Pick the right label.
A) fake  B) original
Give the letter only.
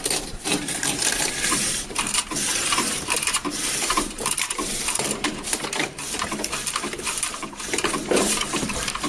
A